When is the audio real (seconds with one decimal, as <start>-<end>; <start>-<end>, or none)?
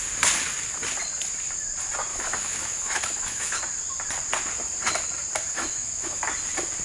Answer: 0.0-2.1; 3.6-5.5; 6.2-6.8